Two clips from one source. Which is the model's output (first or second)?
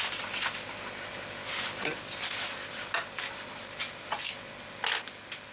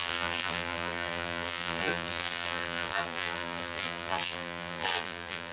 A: second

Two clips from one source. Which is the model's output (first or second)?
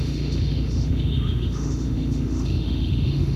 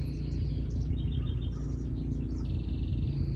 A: first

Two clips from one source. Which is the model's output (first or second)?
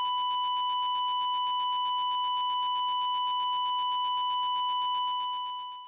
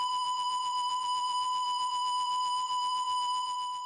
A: second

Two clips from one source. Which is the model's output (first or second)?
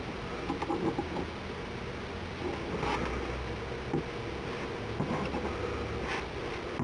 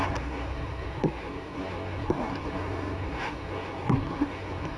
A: second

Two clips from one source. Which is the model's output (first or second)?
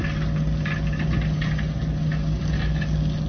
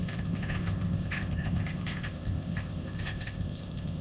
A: second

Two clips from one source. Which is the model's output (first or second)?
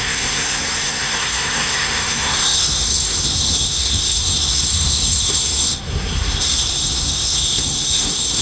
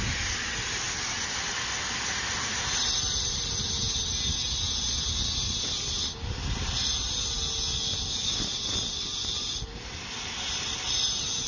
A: first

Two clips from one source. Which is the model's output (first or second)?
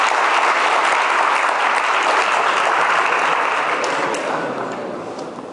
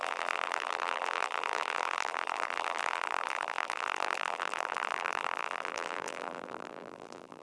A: second